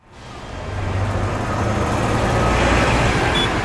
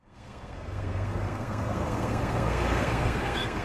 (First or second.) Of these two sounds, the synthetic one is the second